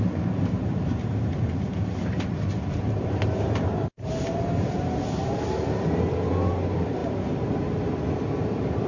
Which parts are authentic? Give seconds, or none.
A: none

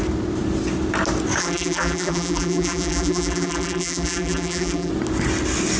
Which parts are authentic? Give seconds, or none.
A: 0.0-1.4; 4.9-5.8

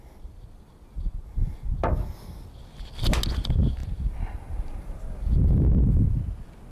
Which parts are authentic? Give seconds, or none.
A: 0.0-1.0; 1.7-3.8; 5.1-6.7

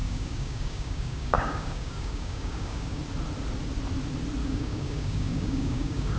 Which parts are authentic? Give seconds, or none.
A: 3.0-4.4

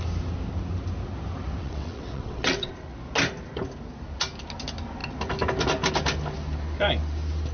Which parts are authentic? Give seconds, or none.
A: 0.0-1.6; 2.7-7.5